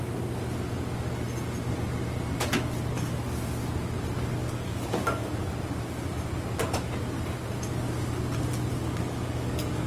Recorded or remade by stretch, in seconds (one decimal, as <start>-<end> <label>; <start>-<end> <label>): 0.0-4.4 recorded; 4.4-5.3 remade; 5.3-8.7 recorded; 8.7-9.9 remade